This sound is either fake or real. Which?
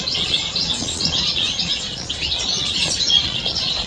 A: fake